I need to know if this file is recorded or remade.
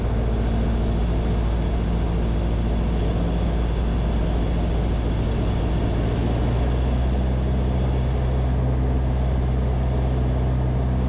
recorded